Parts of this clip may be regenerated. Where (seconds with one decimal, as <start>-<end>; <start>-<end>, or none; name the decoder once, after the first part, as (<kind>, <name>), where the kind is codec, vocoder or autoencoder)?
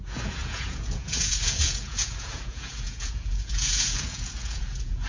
0.0-5.1 (vocoder, Vocos)